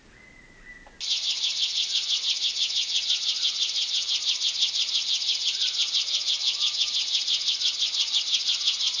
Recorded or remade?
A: recorded